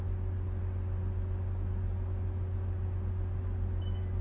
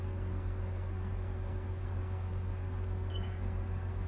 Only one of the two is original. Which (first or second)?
first